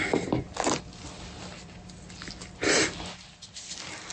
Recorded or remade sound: recorded